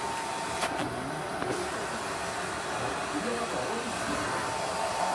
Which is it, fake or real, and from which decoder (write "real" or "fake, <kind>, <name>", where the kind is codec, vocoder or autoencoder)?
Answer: real